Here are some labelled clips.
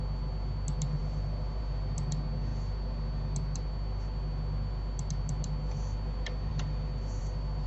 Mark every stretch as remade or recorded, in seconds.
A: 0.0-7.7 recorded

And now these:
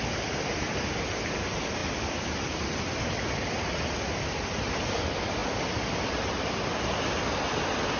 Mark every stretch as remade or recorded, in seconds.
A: 0.0-8.0 recorded

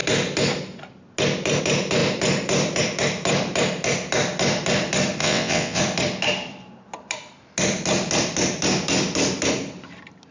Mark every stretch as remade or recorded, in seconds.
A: 0.0-5.2 recorded; 5.2-5.8 remade; 5.8-10.3 recorded

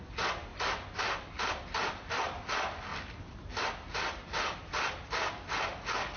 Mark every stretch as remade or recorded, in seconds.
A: 0.0-6.2 recorded